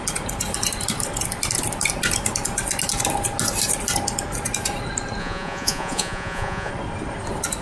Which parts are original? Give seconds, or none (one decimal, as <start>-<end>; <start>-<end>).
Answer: 0.0-5.2; 6.7-7.6